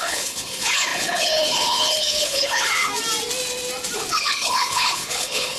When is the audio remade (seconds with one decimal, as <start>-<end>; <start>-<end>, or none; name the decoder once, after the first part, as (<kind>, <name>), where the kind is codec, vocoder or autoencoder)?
0.0-2.9 (codec, HILCodec); 4.1-5.6